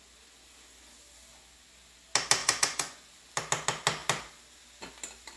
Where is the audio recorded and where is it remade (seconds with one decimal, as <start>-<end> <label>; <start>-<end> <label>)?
0.0-2.4 recorded; 2.4-3.1 remade; 3.1-5.4 recorded